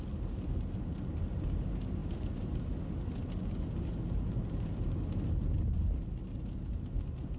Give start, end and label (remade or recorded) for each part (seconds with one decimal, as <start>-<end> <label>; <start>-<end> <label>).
0.0-7.4 recorded